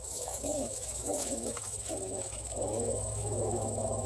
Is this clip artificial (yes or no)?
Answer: yes